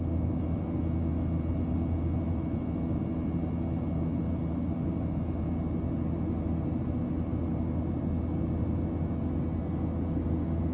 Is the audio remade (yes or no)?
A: no